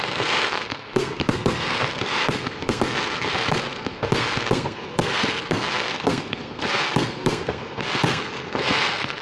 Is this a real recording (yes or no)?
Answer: no